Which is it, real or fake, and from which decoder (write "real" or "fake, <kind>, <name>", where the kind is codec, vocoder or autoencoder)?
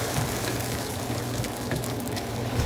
fake, codec, DAC